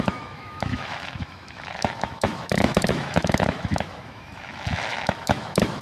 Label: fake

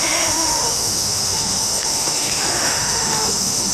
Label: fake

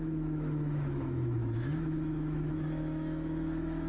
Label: fake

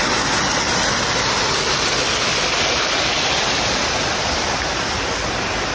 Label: real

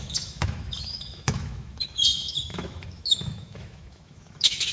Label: fake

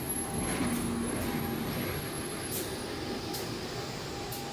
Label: real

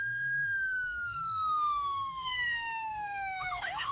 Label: fake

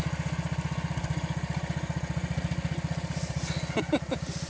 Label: real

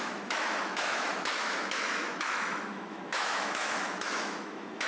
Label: fake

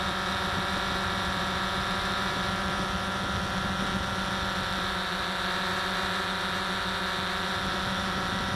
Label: real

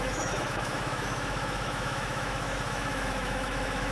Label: fake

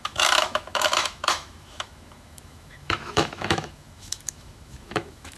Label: fake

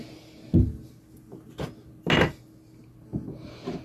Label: real